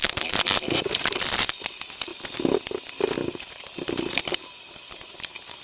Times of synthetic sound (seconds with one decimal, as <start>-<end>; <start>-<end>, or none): none